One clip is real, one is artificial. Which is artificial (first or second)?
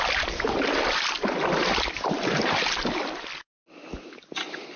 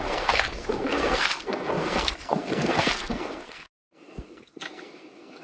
second